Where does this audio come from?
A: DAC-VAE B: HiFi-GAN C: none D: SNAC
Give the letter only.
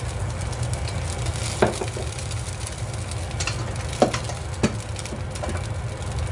C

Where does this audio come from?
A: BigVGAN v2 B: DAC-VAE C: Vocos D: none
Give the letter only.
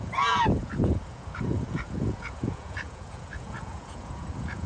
C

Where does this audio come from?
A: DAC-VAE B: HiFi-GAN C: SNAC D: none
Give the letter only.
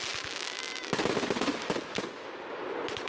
D